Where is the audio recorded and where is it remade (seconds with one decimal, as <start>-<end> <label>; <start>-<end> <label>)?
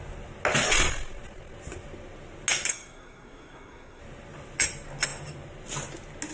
0.0-2.7 recorded; 2.7-4.0 remade; 4.0-6.3 recorded